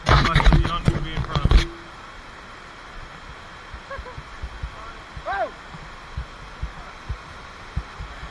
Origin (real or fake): real